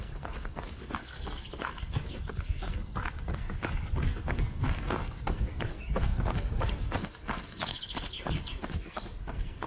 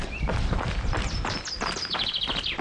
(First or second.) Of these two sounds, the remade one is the first